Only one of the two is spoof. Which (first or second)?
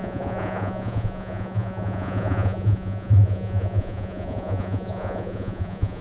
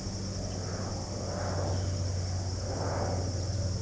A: first